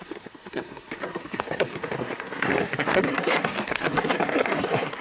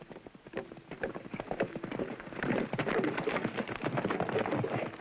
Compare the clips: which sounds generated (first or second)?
first